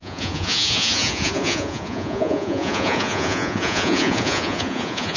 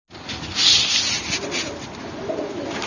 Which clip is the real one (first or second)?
second